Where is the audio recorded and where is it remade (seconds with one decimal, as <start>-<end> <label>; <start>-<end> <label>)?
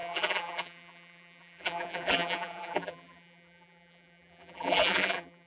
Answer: 0.0-5.5 remade